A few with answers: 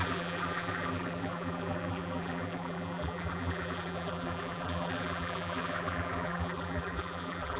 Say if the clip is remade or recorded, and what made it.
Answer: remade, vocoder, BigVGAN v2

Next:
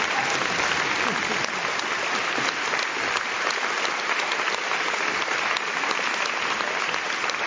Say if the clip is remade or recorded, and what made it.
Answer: recorded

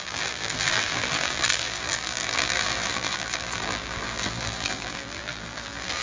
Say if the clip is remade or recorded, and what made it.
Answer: remade, vocoder, BigVGAN v2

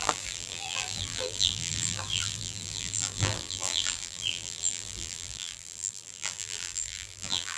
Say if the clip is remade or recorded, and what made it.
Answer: remade, vocoder, BigVGAN v2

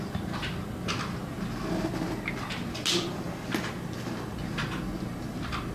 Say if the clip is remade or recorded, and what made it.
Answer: recorded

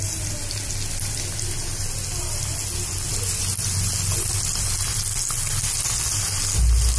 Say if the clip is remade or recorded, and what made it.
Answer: recorded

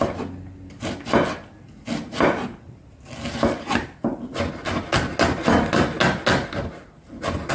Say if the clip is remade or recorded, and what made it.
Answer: recorded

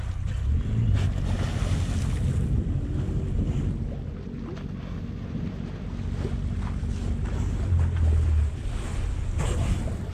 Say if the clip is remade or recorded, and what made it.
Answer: recorded